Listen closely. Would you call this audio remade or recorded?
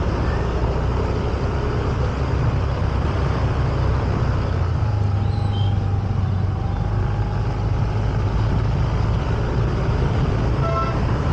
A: recorded